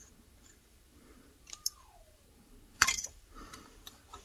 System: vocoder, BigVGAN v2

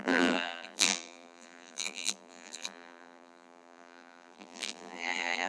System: vocoder, BigVGAN v2